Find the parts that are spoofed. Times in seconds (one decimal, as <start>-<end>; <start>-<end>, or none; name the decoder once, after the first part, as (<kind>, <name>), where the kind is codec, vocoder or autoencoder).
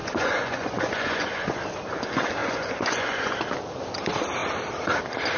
0.0-1.6 (vocoder, Vocos); 2.4-3.3